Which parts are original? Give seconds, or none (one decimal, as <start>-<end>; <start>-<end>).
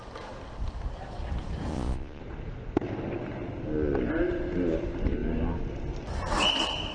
0.0-1.7; 2.2-6.9